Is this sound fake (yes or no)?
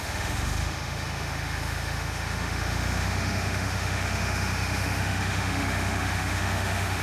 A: yes